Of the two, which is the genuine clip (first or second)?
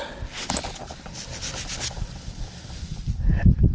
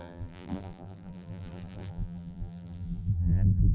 first